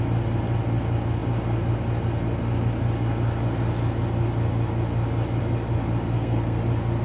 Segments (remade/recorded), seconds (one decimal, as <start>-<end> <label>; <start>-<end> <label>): 0.0-6.1 recorded; 6.1-6.6 remade; 6.6-7.0 recorded